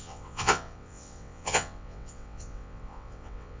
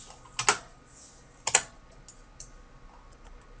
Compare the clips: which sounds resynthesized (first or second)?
first